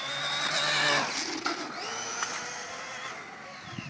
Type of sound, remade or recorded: recorded